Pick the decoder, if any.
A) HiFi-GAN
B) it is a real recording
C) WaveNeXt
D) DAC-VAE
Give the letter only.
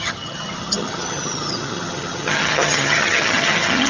A